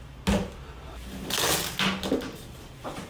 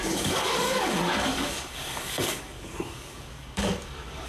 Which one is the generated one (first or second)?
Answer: second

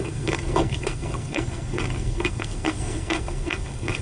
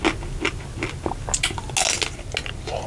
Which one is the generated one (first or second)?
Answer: first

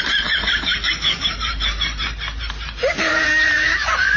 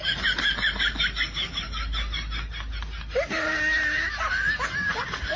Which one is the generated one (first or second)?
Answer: first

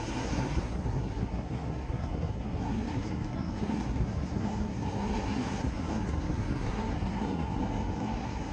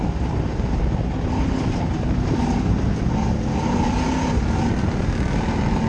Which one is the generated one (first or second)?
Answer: first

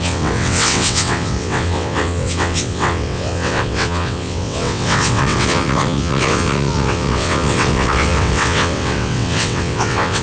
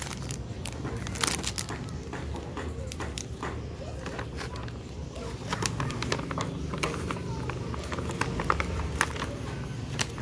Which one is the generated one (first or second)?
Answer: first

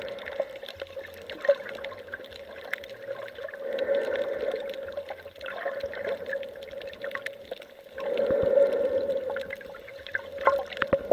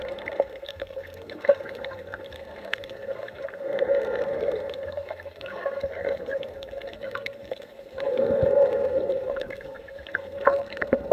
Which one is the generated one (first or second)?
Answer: second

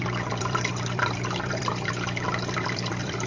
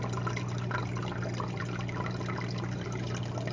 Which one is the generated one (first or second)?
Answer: first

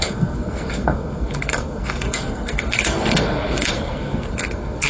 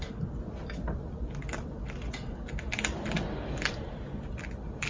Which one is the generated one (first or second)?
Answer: first